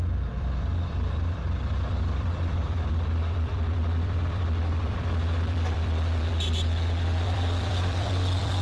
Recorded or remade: remade